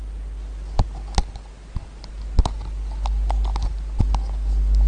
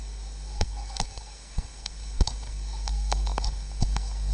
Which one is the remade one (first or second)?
second